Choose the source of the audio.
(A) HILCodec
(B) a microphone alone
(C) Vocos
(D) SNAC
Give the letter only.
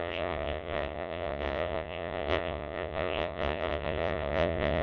C